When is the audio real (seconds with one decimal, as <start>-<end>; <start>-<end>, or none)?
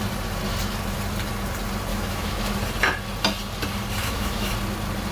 0.0-1.9; 2.4-4.0; 4.5-5.1